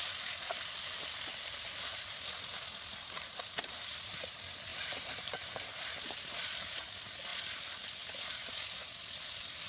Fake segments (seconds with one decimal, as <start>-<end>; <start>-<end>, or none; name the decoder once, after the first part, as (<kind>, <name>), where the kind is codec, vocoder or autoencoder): 1.3-2.1 (vocoder, BigVGAN v2); 2.9-4.1; 4.7-6.8